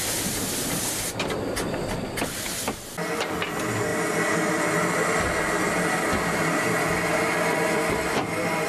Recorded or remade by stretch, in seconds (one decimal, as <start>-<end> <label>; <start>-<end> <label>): 0.0-8.7 recorded